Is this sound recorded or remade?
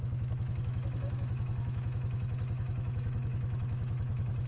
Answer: remade